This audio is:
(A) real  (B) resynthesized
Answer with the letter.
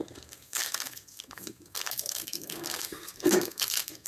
B